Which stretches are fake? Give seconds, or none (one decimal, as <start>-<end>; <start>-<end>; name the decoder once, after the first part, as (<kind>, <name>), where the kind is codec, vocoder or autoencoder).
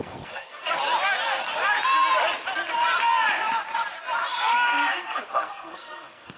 0.0-0.8 (codec, SNAC); 4.3-6.4